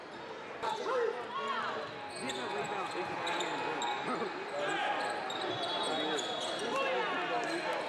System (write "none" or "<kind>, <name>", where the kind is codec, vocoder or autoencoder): none